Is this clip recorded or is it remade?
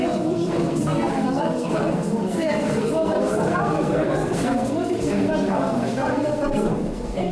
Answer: remade